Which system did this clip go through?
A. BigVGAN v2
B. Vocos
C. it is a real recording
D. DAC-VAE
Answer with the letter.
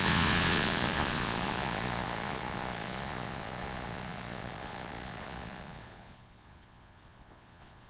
B